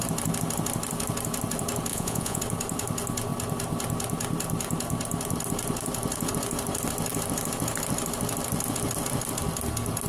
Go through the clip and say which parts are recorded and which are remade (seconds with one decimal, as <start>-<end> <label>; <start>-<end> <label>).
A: 0.0-1.9 recorded; 1.9-2.4 remade; 2.4-10.1 recorded